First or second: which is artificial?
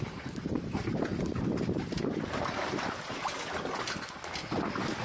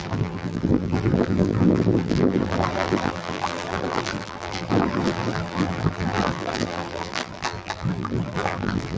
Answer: second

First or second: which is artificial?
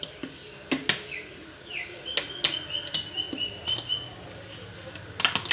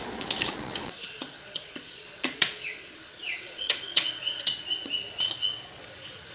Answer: second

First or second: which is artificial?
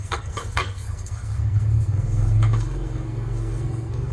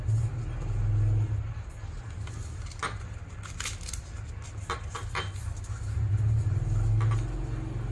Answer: first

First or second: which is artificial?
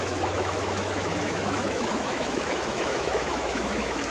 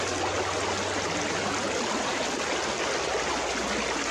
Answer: first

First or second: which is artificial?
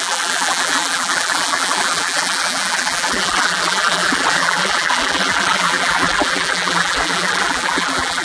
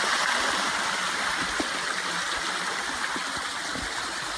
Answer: first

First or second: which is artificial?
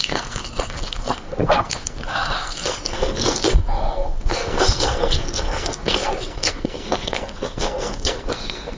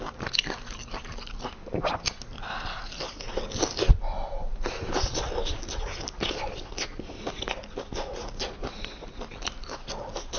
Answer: first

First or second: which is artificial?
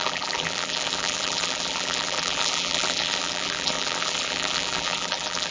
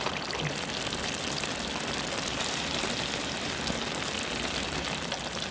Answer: first